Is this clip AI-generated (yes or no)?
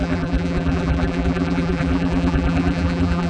yes